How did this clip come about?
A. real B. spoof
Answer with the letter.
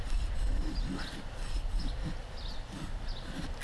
A